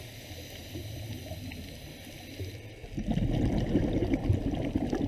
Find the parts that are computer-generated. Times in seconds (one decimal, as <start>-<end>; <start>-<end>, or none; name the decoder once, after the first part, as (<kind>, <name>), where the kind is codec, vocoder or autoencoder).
none